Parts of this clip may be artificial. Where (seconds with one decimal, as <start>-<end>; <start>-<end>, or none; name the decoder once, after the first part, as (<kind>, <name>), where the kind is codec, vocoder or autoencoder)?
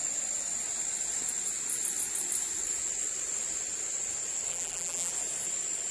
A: 4.5-5.1 (vocoder, BigVGAN v2)